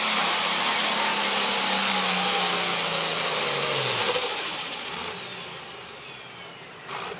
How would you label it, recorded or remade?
recorded